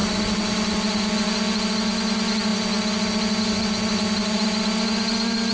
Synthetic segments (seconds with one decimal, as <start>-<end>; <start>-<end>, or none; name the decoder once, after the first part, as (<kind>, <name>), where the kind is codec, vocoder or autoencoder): none